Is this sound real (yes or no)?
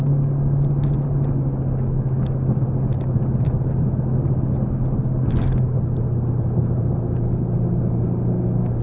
yes